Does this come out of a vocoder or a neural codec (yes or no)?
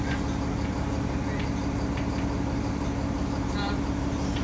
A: no